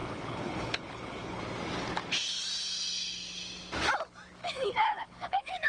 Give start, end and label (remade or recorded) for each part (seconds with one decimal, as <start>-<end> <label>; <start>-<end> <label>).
0.0-1.4 remade; 1.4-4.4 recorded; 4.4-5.7 remade